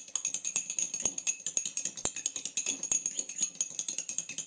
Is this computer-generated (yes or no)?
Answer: no